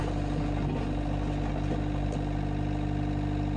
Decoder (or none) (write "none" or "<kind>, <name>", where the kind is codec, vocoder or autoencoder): none